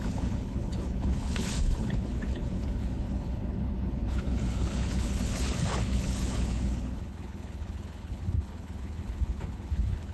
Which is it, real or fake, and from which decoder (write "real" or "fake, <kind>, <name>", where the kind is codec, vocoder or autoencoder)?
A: fake, codec, HILCodec